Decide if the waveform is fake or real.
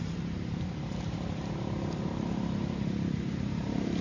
fake